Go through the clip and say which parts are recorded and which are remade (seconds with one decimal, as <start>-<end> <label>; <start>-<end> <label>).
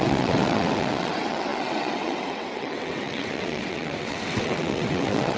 0.0-5.4 remade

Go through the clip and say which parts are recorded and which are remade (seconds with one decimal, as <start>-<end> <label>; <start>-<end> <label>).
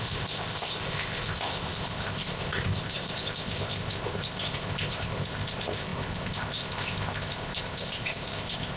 0.0-8.8 remade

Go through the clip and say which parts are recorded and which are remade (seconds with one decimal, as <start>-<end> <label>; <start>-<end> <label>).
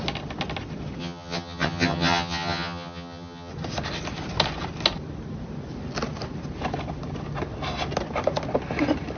0.0-1.0 recorded; 1.0-3.5 remade; 3.5-9.2 recorded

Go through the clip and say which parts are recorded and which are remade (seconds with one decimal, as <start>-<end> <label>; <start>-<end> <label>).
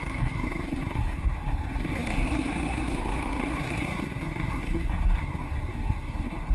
0.0-6.5 remade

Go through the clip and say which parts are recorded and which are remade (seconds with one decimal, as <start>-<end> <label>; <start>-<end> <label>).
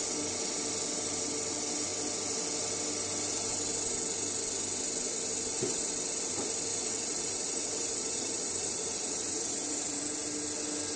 0.0-6.7 recorded; 6.7-10.0 remade; 10.0-11.0 recorded